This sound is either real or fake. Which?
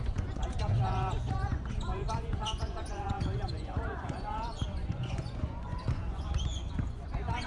fake